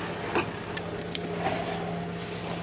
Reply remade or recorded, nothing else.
recorded